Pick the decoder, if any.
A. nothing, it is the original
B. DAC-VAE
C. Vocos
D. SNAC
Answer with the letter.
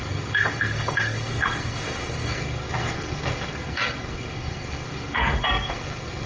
D